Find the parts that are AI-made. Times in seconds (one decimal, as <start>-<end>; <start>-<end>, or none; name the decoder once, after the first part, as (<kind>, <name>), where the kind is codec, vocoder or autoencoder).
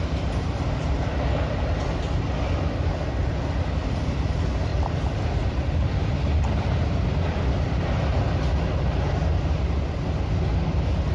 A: 4.7-7.6 (vocoder, BigVGAN v2)